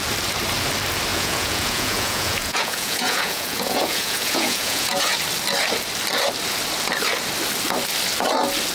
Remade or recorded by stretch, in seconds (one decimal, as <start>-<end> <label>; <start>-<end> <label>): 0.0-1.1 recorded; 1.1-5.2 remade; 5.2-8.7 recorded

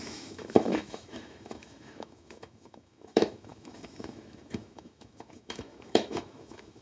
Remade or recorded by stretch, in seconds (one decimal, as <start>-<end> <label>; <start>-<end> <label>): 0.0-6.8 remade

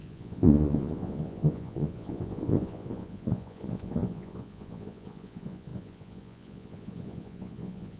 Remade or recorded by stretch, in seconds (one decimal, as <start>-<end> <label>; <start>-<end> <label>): 0.0-8.0 remade